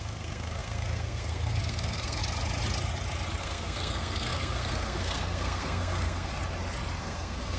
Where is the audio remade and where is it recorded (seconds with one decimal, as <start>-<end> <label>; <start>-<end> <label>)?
0.0-2.2 remade; 2.2-3.4 recorded; 3.4-6.3 remade; 6.3-7.0 recorded; 7.0-7.6 remade